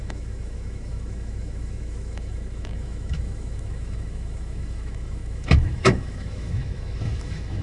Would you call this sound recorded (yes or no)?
no